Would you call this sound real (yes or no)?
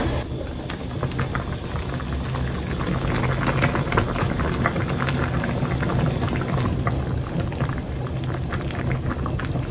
yes